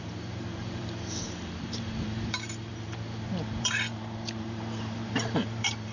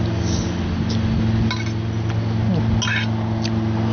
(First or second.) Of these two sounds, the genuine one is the second